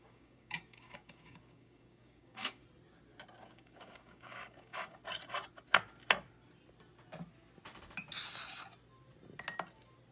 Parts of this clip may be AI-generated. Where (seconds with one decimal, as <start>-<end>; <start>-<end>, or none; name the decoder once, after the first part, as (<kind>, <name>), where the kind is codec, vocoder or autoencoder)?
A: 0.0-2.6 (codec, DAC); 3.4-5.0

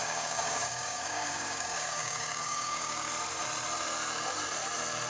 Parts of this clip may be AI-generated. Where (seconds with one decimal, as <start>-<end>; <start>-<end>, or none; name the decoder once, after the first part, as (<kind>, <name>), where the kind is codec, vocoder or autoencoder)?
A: 0.0-3.1 (codec, DAC)

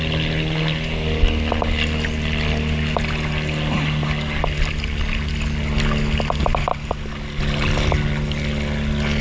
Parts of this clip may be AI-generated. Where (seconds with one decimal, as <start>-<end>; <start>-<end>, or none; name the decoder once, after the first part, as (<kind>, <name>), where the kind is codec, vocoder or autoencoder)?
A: none

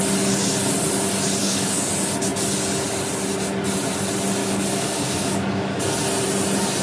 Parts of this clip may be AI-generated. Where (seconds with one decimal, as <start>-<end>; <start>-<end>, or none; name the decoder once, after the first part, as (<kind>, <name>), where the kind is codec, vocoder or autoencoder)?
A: 1.4-1.9 (codec, DAC); 4.4-5.8

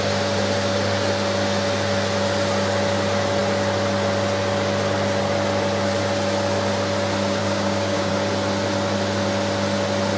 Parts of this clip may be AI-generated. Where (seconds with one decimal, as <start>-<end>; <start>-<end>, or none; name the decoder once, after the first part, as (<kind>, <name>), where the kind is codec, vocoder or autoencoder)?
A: 7.4-8.1 (codec, DAC)

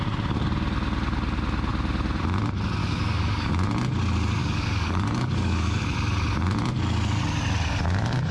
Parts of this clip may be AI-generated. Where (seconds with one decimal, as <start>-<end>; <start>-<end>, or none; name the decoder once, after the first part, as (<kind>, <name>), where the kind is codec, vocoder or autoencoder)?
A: 2.8-3.5 (codec, DAC); 4.4-5.8

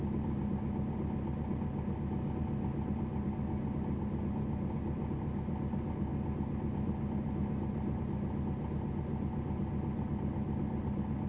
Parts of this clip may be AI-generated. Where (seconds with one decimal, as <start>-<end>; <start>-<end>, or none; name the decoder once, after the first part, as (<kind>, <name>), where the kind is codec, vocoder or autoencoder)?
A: none